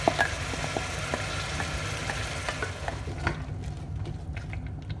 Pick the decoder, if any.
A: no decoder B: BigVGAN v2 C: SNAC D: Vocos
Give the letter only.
A